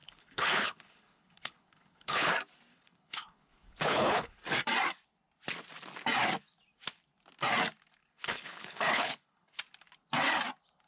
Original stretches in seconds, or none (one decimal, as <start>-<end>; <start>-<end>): 2.3-2.7; 4.4-8.0; 9.6-10.9